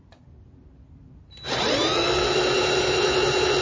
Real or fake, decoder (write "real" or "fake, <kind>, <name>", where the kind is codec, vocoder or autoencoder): real